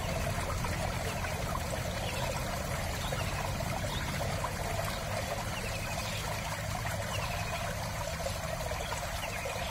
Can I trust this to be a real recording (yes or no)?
yes